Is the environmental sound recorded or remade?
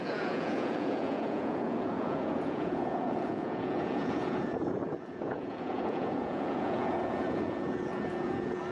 remade